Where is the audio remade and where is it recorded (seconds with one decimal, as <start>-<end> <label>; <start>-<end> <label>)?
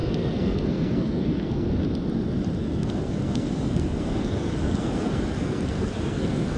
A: 0.0-1.7 remade; 1.7-2.6 recorded; 2.6-6.6 remade